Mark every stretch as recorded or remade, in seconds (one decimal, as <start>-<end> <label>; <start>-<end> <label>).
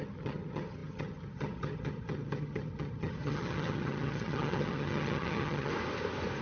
0.0-5.7 remade; 5.7-6.4 recorded